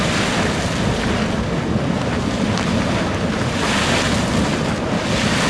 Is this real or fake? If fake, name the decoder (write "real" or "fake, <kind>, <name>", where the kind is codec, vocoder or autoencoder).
real